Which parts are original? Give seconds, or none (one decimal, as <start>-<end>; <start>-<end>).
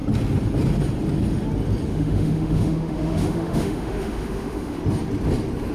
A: 0.0-1.9; 4.8-5.7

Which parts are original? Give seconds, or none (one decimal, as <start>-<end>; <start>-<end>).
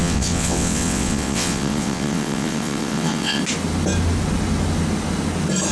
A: 3.4-5.7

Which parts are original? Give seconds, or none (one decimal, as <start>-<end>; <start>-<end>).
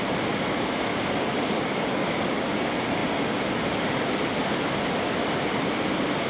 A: 0.0-0.9; 2.6-6.3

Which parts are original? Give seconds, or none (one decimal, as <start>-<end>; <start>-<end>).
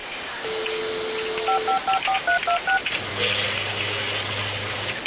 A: 0.0-5.1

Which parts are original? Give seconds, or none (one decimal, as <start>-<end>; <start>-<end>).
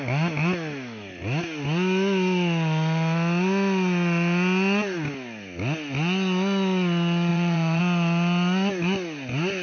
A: 0.0-7.3; 7.8-9.6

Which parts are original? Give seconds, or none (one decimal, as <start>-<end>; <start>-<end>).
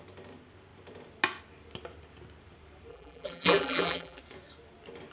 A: 0.0-2.9; 4.2-5.1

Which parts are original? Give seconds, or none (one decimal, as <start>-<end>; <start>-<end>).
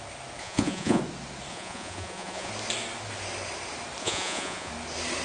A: 0.0-0.4; 1.0-1.5; 2.5-4.0; 4.7-5.2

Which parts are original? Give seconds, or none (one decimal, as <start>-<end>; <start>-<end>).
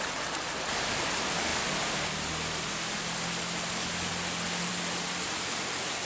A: 0.0-6.1